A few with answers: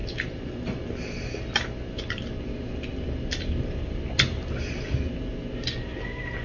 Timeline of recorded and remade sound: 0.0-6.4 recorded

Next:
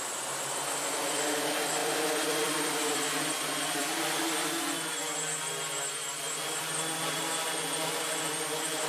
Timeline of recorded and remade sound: 0.0-8.9 remade